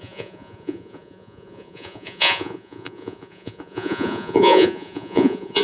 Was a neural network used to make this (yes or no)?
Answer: yes